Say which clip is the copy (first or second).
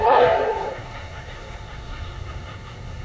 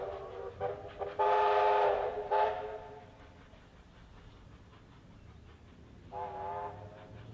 first